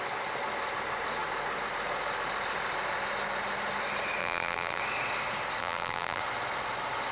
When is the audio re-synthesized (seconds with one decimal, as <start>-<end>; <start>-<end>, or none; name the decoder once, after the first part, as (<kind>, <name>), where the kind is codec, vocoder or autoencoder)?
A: 4.2-4.8 (vocoder, BigVGAN v2); 5.6-6.2